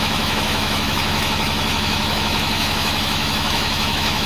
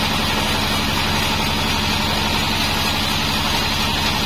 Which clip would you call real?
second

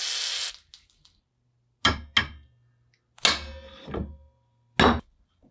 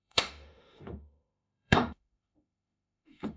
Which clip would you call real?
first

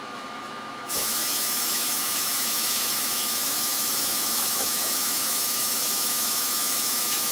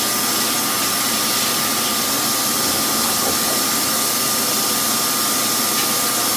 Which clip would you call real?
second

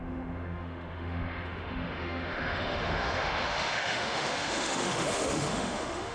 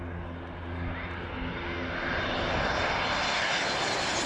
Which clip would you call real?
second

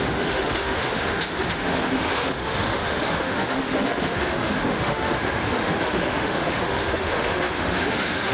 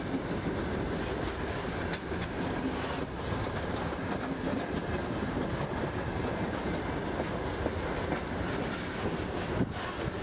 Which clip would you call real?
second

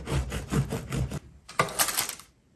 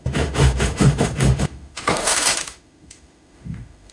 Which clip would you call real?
first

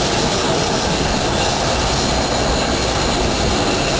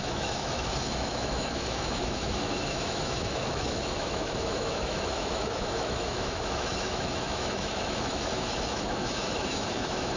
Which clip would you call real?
first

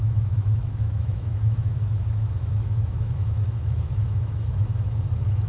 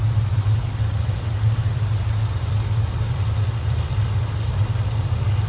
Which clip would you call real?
second